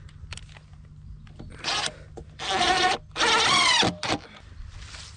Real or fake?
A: real